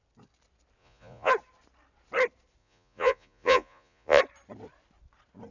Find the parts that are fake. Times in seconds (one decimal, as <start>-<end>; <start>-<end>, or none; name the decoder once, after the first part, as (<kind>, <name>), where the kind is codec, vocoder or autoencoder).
0.8-1.3 (vocoder, Vocos); 2.6-4.2